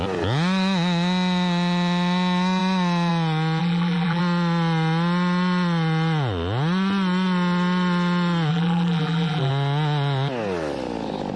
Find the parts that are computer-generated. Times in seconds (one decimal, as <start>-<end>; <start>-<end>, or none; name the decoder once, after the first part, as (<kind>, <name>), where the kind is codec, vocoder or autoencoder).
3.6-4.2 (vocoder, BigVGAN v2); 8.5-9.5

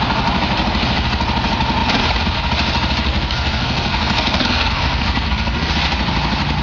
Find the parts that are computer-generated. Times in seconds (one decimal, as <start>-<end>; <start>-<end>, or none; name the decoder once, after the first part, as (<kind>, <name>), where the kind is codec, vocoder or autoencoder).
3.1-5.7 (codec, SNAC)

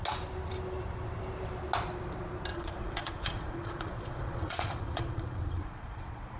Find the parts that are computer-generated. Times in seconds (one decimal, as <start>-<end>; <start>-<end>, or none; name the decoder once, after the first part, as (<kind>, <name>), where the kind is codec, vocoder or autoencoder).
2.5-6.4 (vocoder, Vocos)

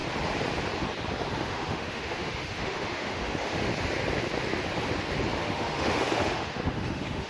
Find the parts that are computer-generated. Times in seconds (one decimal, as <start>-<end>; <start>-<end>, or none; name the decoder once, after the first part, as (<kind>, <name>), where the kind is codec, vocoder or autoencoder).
1.4-3.7 (autoencoder, DAC-VAE); 5.4-7.3